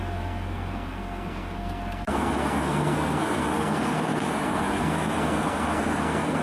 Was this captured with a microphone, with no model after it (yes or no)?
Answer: no